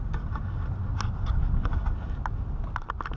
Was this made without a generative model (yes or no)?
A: yes